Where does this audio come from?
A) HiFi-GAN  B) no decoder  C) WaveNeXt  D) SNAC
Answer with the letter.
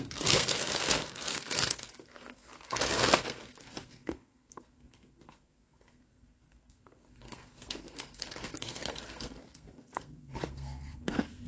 D